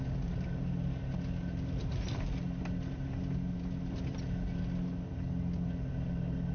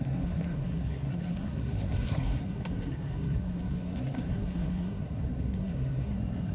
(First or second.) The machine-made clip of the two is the second